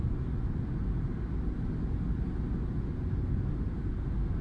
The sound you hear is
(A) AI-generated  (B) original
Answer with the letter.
B